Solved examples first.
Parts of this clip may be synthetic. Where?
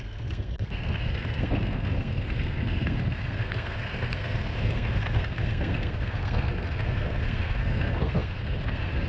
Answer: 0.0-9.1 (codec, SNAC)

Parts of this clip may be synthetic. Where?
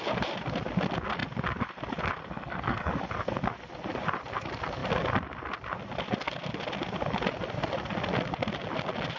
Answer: 2.2-2.9 (codec, SNAC)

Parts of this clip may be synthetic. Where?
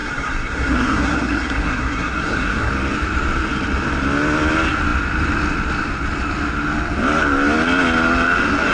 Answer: 0.0-2.7 (codec, SNAC)